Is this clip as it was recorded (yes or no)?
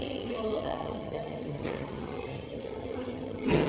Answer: no